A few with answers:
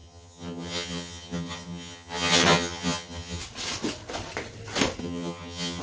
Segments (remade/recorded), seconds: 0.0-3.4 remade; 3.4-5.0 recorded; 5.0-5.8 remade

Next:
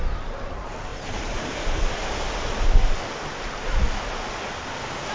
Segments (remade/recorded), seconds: 0.0-5.1 recorded

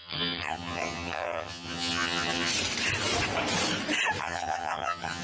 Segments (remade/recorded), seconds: 0.0-2.5 remade; 2.5-4.2 recorded; 4.2-5.2 remade

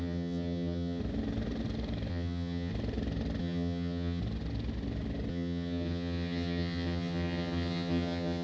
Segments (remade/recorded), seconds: 0.0-1.0 remade; 1.0-2.1 recorded; 2.1-2.7 remade; 2.7-3.4 recorded; 3.4-4.2 remade; 4.2-5.3 recorded; 5.3-8.4 remade